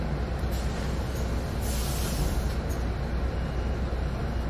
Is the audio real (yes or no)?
yes